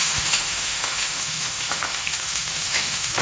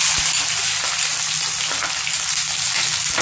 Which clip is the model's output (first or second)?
first